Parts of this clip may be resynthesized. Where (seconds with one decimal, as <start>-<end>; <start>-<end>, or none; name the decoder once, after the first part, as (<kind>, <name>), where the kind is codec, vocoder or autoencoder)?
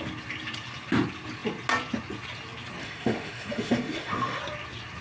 2.8-4.4 (autoencoder, DAC-VAE)